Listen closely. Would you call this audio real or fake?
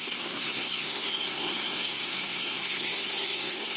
fake